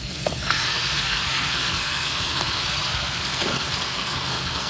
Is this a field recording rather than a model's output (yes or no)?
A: no